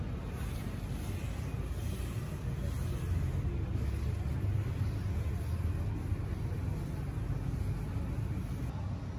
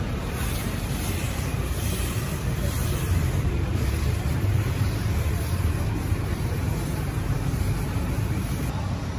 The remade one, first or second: second